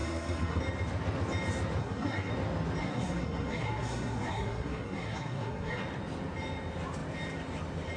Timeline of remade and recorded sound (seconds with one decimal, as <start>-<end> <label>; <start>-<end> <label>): 0.0-0.6 remade; 0.6-1.8 recorded; 1.8-2.3 remade; 2.3-2.8 recorded; 2.8-5.8 remade; 5.8-8.0 recorded